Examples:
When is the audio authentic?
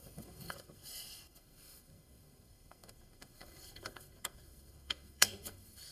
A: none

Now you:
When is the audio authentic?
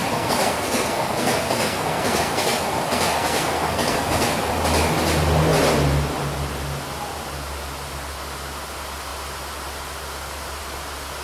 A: 4.5-11.2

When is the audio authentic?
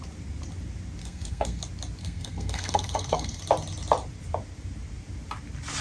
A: 0.0-1.0; 1.6-2.0; 3.4-5.8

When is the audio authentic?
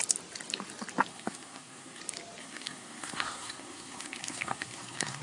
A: 0.0-1.1; 2.0-2.4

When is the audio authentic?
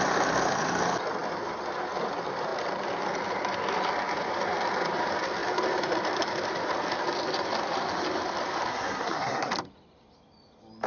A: 0.0-8.7; 9.5-10.9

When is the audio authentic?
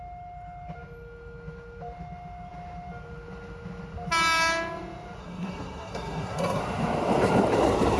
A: 0.0-5.2; 6.6-8.0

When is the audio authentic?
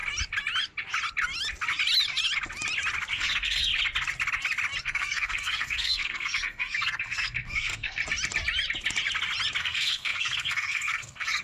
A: 0.0-3.1; 3.7-4.8; 8.0-9.6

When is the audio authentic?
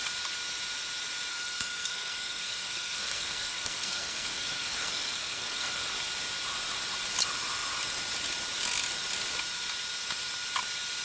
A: 0.0-1.3; 5.8-11.0